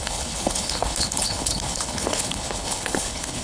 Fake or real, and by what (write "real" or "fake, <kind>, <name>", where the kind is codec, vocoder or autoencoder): fake, codec, HILCodec